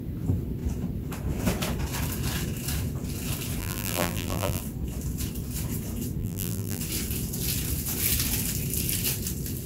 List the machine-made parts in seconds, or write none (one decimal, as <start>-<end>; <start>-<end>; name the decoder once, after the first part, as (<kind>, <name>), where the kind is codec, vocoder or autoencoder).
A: 3.6-4.6 (vocoder, BigVGAN v2); 6.2-6.8